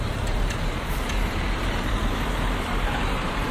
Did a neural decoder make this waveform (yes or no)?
yes